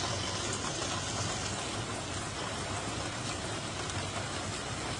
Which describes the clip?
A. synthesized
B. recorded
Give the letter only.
B